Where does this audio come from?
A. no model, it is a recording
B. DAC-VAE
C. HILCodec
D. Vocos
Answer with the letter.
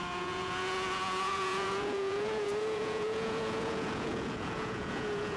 D